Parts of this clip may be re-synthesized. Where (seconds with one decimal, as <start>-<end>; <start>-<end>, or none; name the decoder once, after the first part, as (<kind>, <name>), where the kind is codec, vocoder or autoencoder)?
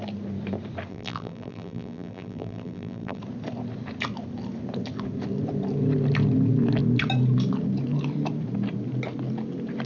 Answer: 0.9-3.2 (vocoder, BigVGAN v2)